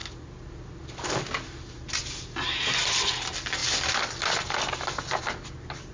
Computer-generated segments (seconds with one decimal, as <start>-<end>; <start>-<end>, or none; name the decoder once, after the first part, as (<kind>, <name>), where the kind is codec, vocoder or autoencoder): none

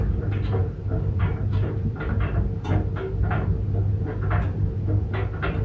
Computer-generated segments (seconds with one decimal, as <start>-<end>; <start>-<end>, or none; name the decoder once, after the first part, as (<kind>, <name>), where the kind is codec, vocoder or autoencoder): 0.6-4.0 (vocoder, BigVGAN v2)

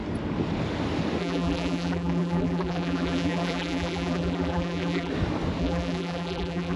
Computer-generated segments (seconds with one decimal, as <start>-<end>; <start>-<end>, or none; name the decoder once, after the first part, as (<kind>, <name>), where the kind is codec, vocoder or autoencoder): 1.2-5.1 (vocoder, BigVGAN v2); 5.6-6.8

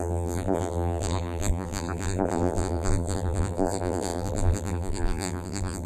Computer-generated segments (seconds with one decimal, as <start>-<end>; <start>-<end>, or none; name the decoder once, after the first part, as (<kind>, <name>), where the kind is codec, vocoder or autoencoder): 0.0-5.9 (vocoder, BigVGAN v2)

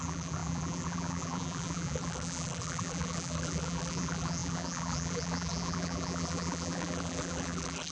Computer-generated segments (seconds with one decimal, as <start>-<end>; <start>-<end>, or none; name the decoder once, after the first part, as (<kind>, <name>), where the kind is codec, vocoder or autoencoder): 0.0-7.9 (vocoder, BigVGAN v2)

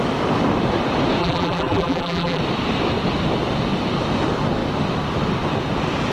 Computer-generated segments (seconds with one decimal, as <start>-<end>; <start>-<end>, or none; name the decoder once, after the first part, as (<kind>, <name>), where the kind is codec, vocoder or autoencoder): 1.2-2.4 (vocoder, BigVGAN v2)